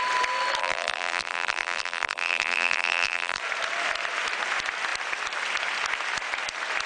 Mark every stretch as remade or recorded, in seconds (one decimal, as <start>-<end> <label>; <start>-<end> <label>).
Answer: 0.0-0.6 recorded; 0.6-3.4 remade; 3.4-6.9 recorded